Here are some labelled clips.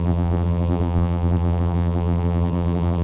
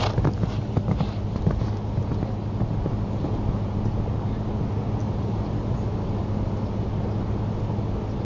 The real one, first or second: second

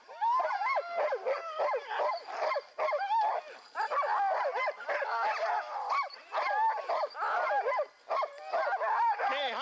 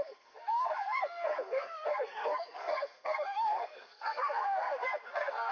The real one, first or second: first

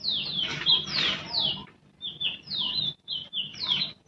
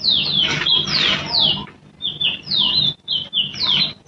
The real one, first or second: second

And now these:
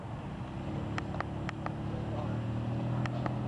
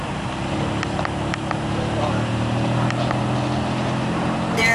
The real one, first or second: first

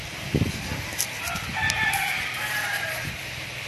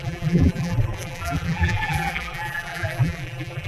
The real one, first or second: first